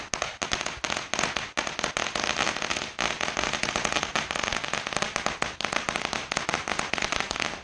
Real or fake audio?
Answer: real